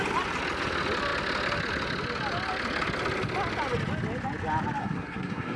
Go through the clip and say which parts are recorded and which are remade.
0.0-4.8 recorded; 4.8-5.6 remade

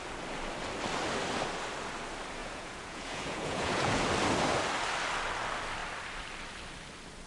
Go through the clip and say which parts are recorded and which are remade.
0.0-2.4 recorded; 2.4-4.0 remade; 4.0-7.3 recorded

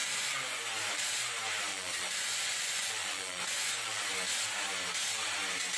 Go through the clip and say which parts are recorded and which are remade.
0.0-0.6 remade; 0.6-1.7 recorded; 1.7-4.0 remade; 4.0-5.8 recorded

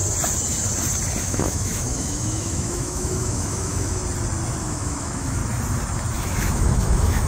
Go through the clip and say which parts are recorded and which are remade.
0.0-1.2 recorded; 1.2-4.0 remade; 4.0-4.6 recorded; 4.6-5.4 remade; 5.4-6.2 recorded; 6.2-7.3 remade

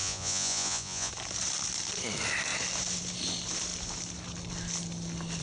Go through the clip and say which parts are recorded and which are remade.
0.0-1.1 remade; 1.1-5.4 recorded

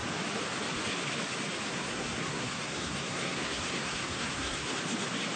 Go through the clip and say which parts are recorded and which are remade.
0.0-1.7 recorded; 1.7-4.8 remade; 4.8-5.4 recorded